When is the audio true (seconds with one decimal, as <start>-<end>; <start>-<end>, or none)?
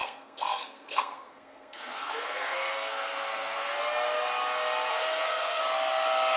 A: 3.8-4.9; 5.6-6.4